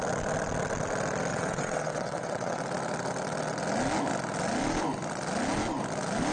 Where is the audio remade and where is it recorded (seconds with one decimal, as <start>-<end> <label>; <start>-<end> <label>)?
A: 0.0-1.3 recorded; 1.3-2.6 remade; 2.6-6.3 recorded